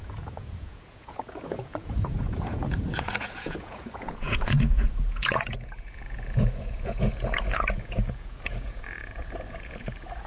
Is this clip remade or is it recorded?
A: remade